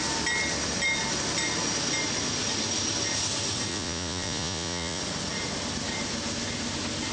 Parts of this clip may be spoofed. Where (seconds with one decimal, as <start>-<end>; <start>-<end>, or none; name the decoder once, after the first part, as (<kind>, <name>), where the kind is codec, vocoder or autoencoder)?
3.7-5.0 (vocoder, Vocos)